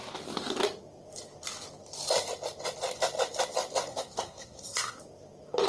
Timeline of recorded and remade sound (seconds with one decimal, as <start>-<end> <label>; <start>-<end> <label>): 0.0-3.9 recorded; 3.9-5.0 remade; 5.0-5.7 recorded